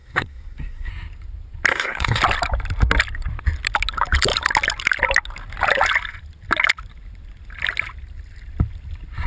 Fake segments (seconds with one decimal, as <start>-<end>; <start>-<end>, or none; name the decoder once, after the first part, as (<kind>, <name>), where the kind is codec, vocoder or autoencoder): 0.0-0.9 (codec, SNAC); 1.7-2.2